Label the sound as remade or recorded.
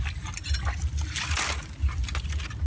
recorded